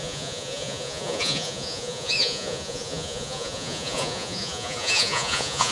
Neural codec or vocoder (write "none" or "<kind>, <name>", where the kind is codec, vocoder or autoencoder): vocoder, Vocos